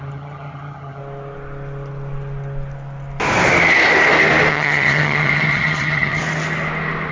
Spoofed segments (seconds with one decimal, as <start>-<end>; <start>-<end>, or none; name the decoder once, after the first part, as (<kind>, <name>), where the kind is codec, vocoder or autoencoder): 0.0-1.0 (vocoder, HiFi-GAN); 4.5-6.2